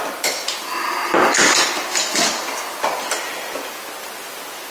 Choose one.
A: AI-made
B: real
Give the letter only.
B